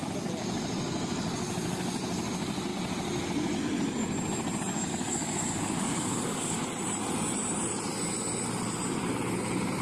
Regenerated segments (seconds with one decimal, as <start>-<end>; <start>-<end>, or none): 4.9-6.6